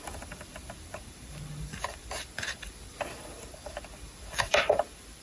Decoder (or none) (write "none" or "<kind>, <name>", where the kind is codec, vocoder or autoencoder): vocoder, BigVGAN v2